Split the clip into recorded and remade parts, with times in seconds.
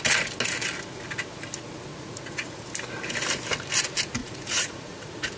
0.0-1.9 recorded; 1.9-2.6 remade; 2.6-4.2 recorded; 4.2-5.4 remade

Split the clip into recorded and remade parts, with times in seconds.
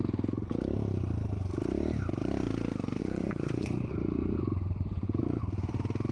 0.0-3.0 recorded; 3.0-5.4 remade; 5.4-6.1 recorded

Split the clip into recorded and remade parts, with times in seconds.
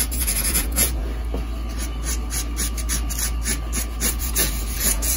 0.0-1.0 remade; 1.0-4.1 recorded; 4.1-5.2 remade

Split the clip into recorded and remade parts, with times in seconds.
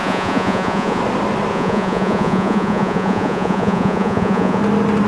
0.0-1.0 remade; 1.0-1.5 recorded; 1.5-4.6 remade; 4.6-5.1 recorded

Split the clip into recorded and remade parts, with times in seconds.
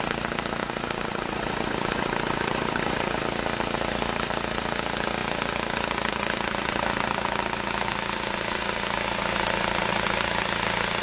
0.0-0.6 recorded; 0.6-3.2 remade; 3.2-11.0 recorded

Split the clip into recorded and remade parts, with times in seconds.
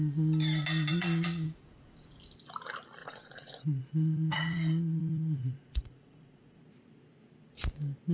0.0-0.9 recorded; 0.9-2.2 remade; 2.2-3.0 recorded; 3.0-6.6 remade; 6.6-8.1 recorded